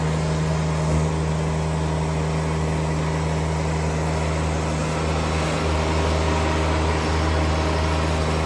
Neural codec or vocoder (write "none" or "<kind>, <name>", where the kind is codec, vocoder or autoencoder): none